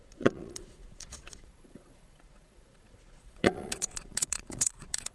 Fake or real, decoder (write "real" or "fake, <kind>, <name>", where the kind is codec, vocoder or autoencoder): fake, vocoder, Vocos